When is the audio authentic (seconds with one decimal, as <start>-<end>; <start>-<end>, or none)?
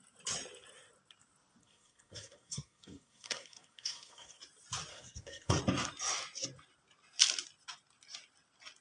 0.0-1.6; 4.4-4.9; 5.6-8.8